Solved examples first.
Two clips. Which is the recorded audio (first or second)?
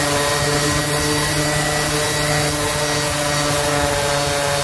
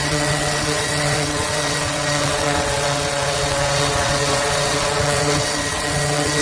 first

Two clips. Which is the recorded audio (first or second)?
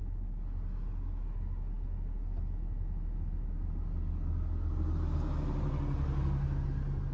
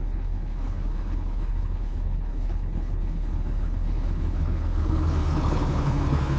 first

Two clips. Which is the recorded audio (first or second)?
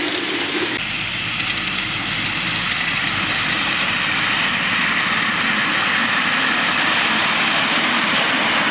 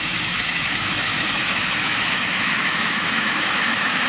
first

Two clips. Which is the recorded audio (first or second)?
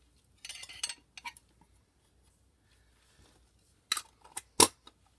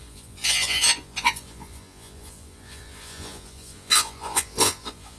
first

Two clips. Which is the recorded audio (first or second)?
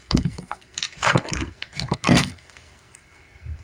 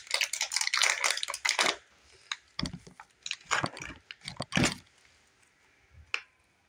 second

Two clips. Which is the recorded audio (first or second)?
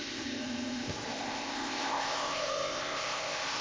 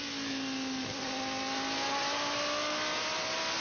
second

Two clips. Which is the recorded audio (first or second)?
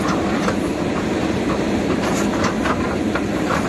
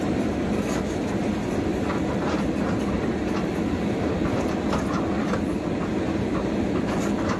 second